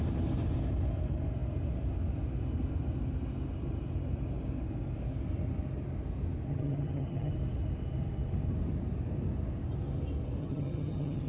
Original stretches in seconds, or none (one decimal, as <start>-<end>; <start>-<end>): 0.0-6.5; 7.3-10.4